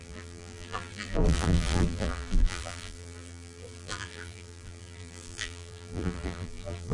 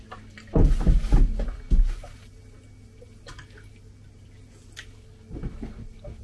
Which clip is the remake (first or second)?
first